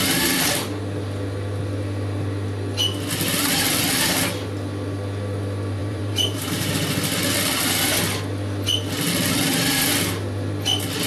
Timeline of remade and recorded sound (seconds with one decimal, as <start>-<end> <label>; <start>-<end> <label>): 0.0-5.8 recorded; 5.8-6.7 remade; 6.7-11.1 recorded

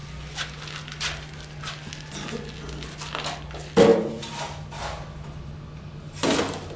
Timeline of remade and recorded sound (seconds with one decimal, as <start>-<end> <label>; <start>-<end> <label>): 0.0-3.9 recorded; 3.9-4.4 remade; 4.4-6.8 recorded

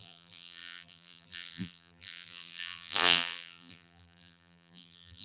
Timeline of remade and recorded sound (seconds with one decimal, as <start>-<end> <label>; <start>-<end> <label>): 0.0-5.2 remade

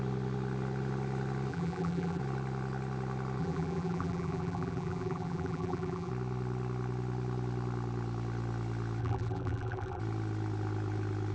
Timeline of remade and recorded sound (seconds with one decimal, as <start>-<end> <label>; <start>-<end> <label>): 0.0-1.5 recorded; 1.5-2.2 remade; 2.2-3.4 recorded; 3.4-6.1 remade; 6.1-9.0 recorded; 9.0-10.0 remade; 10.0-11.3 recorded

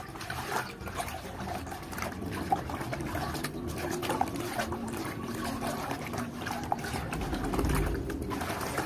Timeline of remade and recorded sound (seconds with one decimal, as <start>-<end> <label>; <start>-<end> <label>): 0.0-4.0 recorded; 4.0-5.5 remade; 5.5-8.9 recorded

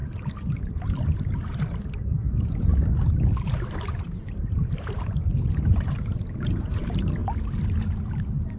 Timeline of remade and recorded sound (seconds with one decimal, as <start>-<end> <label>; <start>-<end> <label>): 0.0-2.7 remade; 2.7-3.7 recorded; 3.7-7.2 remade; 7.2-8.2 recorded; 8.2-8.6 remade